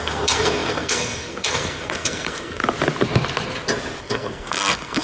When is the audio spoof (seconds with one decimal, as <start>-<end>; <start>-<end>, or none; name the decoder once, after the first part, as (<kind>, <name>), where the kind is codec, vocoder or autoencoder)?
0.0-2.6 (codec, SNAC); 4.0-5.0

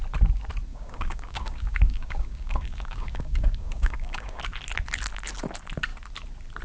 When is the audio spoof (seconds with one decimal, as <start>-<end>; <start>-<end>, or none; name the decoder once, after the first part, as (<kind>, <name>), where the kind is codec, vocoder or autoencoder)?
0.7-4.4 (codec, DAC)

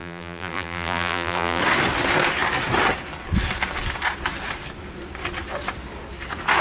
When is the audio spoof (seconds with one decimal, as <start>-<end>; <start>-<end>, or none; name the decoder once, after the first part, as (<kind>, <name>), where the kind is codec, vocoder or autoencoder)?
0.0-1.6 (vocoder, BigVGAN v2)

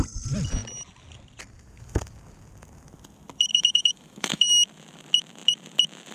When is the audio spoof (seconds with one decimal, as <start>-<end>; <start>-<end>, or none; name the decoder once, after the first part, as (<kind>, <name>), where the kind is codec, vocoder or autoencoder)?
3.5-4.5 (autoencoder, DAC-VAE)